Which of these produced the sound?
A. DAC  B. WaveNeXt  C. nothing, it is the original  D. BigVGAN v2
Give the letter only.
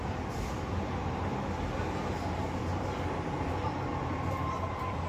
C